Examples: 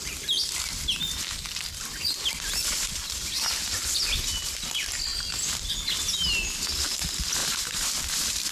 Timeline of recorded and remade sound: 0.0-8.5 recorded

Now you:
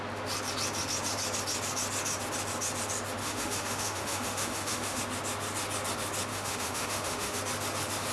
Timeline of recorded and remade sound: 0.0-3.2 recorded; 3.2-5.0 remade; 5.0-6.3 recorded; 6.3-7.4 remade; 7.4-8.1 recorded

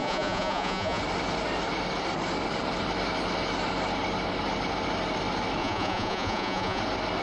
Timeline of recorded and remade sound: 0.0-1.0 remade; 1.0-5.6 recorded; 5.6-6.8 remade; 6.8-7.2 recorded

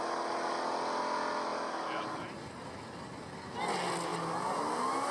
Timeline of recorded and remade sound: 0.0-5.1 recorded

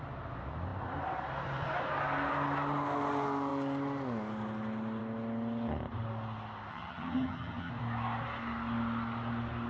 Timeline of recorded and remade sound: 0.0-6.7 recorded; 6.7-7.7 remade; 7.7-9.7 recorded